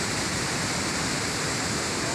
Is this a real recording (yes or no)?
no